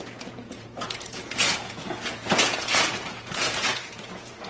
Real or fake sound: fake